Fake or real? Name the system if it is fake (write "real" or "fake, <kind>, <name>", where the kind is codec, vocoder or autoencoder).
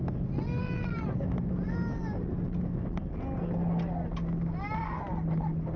real